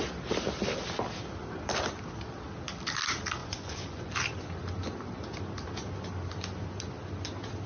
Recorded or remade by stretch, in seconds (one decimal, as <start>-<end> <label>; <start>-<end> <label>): 0.0-3.4 recorded; 3.4-4.1 remade; 4.1-7.7 recorded